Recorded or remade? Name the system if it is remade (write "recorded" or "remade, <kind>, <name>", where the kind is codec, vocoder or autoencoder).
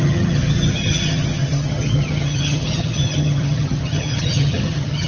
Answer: remade, vocoder, HiFi-GAN